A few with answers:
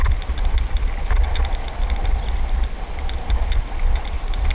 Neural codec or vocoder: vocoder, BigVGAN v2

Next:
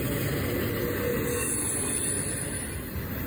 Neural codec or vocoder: none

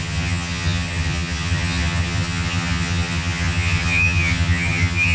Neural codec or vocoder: vocoder, HiFi-GAN